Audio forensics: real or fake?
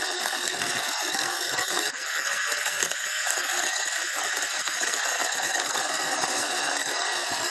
fake